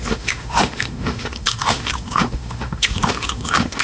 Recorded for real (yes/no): no